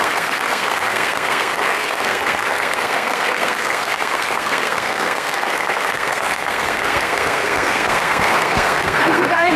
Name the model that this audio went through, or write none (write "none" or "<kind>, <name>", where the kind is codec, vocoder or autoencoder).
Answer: codec, SNAC